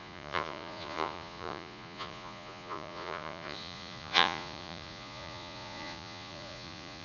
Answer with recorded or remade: remade